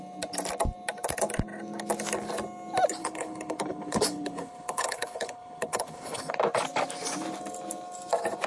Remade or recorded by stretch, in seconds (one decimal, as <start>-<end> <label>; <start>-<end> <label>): 0.0-3.0 recorded; 3.0-6.3 remade; 6.3-8.5 recorded